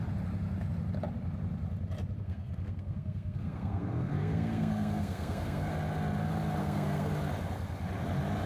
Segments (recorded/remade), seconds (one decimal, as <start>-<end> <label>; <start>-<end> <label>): 0.0-2.2 recorded; 2.2-5.7 remade; 5.7-6.6 recorded; 6.6-7.1 remade; 7.1-8.5 recorded